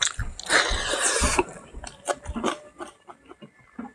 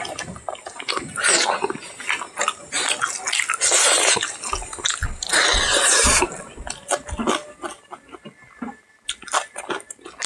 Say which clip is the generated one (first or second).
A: first